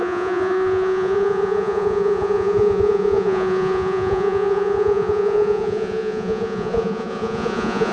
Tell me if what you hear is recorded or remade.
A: remade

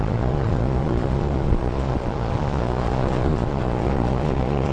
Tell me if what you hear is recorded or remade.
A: remade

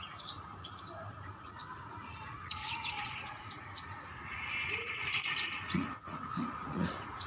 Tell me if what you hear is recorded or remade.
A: remade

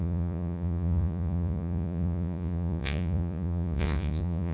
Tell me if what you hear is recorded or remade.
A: remade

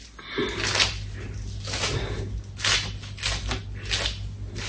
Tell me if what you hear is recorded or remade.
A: recorded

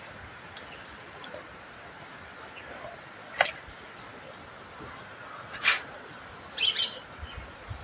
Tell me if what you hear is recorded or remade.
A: recorded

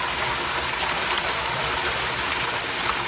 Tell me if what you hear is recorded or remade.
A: recorded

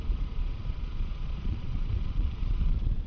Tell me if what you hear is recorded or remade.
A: remade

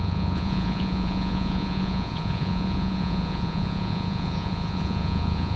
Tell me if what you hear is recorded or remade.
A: remade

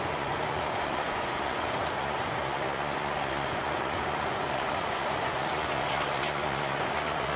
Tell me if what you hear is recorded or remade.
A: remade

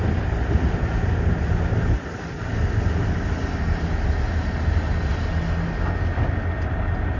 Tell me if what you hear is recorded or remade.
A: recorded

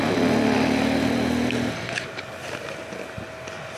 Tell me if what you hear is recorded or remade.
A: recorded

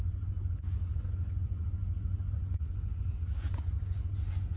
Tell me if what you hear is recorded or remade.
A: remade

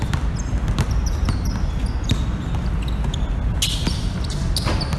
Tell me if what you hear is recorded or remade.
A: recorded